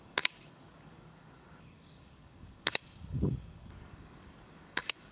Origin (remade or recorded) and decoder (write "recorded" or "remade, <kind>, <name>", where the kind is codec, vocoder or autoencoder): remade, codec, DAC